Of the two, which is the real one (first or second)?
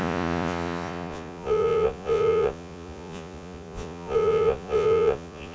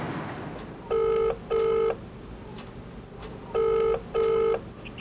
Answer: second